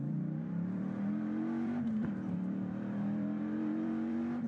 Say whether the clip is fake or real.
fake